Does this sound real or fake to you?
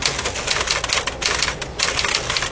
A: real